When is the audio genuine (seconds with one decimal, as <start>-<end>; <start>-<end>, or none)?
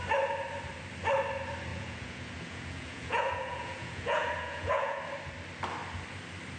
0.0-1.7; 5.0-6.6